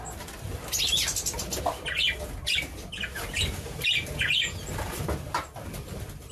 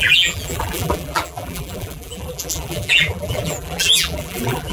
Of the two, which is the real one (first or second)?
first